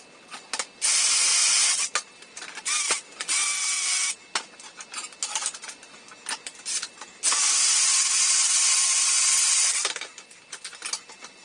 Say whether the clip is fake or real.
real